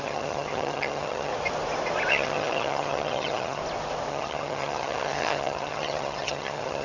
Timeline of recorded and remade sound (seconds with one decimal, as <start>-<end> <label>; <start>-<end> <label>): 0.0-1.3 remade; 1.3-2.1 recorded; 2.1-3.6 remade; 3.6-4.1 recorded; 4.1-6.8 remade

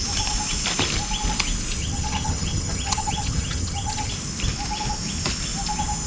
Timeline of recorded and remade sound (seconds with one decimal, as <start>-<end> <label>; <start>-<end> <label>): 0.0-1.8 recorded; 1.8-4.1 remade; 4.1-6.1 recorded

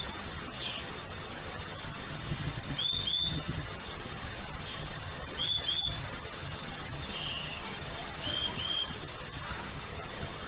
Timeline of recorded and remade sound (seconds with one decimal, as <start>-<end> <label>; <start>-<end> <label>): 0.0-10.5 remade

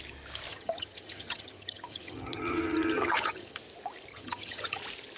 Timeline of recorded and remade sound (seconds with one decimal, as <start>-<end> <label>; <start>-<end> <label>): 0.0-0.5 recorded; 0.5-3.6 remade; 3.6-4.1 recorded; 4.1-4.8 remade; 4.8-5.2 recorded